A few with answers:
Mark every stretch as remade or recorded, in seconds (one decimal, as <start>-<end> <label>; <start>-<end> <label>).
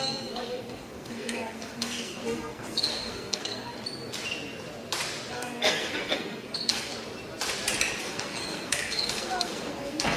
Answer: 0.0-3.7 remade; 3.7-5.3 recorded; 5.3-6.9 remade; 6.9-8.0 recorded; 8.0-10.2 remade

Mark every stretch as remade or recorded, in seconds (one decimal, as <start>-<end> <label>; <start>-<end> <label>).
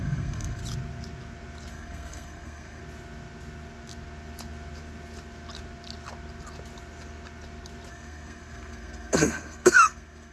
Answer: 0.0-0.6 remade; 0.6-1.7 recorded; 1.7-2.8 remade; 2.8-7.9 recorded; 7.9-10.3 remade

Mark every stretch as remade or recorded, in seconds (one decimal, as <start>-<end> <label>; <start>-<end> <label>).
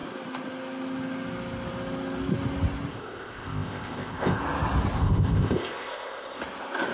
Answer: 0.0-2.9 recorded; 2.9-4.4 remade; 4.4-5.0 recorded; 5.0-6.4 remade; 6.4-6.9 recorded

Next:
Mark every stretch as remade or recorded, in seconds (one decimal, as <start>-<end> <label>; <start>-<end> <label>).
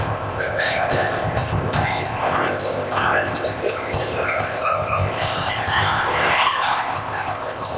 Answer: 0.0-7.8 remade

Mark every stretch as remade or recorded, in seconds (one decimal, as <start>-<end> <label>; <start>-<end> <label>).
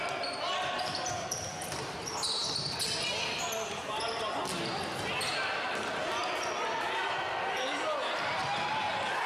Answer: 0.0-9.3 recorded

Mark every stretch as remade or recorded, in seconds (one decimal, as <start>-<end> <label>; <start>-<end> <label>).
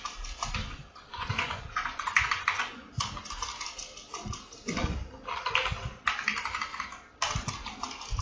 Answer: 0.0-1.1 recorded; 1.1-2.9 remade; 2.9-8.2 recorded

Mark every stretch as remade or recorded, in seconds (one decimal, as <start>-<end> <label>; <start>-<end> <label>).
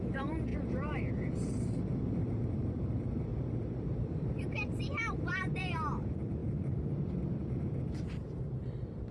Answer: 0.0-3.3 remade; 3.3-4.0 recorded; 4.0-9.1 remade